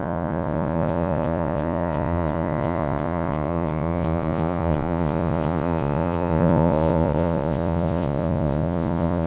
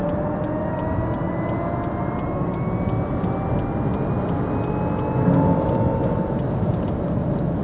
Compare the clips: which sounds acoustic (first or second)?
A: second